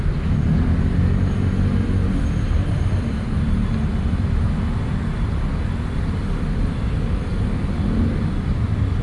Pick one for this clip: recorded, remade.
recorded